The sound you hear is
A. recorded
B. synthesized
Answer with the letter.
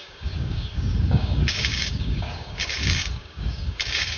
B